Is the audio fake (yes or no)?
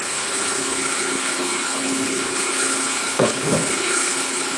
yes